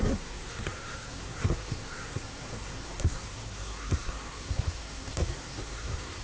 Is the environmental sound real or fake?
fake